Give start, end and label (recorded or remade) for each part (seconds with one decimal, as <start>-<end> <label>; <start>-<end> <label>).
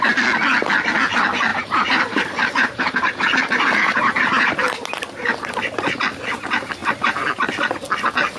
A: 0.0-1.5 recorded; 1.5-5.5 remade; 5.5-6.8 recorded; 6.8-7.4 remade; 7.4-8.4 recorded